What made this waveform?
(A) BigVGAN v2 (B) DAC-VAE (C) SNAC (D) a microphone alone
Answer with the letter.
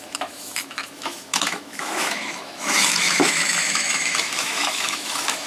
B